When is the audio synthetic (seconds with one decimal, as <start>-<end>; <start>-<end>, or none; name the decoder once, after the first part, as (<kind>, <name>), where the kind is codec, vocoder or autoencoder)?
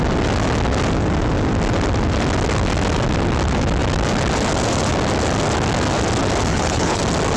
6.5-7.0 (codec, HILCodec)